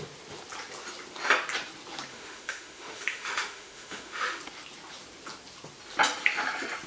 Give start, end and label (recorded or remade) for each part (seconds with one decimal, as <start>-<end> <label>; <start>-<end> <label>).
0.0-2.1 recorded; 2.1-4.4 remade; 4.4-6.9 recorded